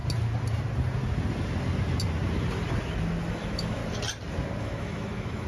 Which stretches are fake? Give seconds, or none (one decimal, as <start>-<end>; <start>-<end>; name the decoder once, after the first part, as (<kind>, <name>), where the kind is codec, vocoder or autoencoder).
3.3-3.8 (autoencoder, DAC-VAE); 4.6-5.5